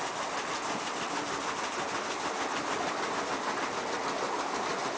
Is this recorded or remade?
recorded